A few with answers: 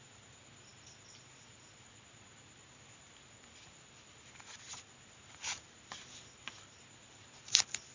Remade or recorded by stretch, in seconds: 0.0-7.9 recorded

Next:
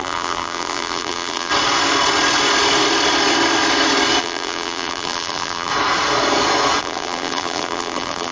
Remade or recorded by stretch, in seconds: 0.0-1.5 remade; 1.5-4.2 recorded; 4.2-5.7 remade; 5.7-6.8 recorded; 6.8-8.3 remade

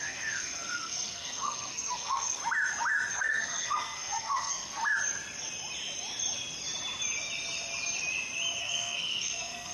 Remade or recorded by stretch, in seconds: 0.0-2.4 remade; 2.4-3.1 recorded; 3.1-4.8 remade; 4.8-8.6 recorded; 8.6-9.7 remade

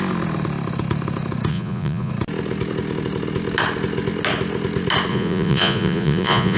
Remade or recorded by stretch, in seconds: 0.0-1.5 recorded; 1.5-2.1 remade; 2.1-5.1 recorded; 5.1-6.6 remade

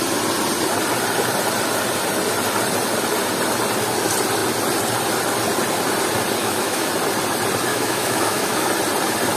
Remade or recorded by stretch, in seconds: 0.0-6.4 recorded; 6.4-6.9 remade; 6.9-7.7 recorded; 7.7-8.7 remade; 8.7-9.4 recorded

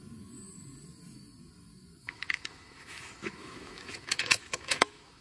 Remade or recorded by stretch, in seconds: 0.0-2.0 recorded; 2.0-5.2 remade

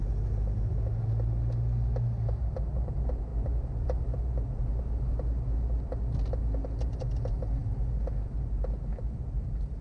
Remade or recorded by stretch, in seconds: 0.0-3.3 recorded; 3.3-4.0 remade; 4.0-9.8 recorded